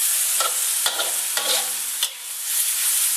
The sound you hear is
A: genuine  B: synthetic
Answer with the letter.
A